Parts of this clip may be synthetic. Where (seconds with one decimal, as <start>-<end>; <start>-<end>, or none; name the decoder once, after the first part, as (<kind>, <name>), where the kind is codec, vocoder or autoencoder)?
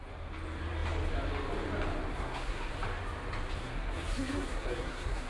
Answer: 2.1-2.7 (codec, SNAC); 3.6-5.3